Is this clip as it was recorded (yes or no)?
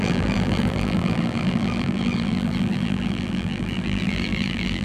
no